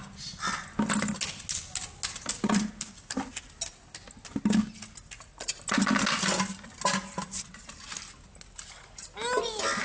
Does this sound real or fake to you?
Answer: real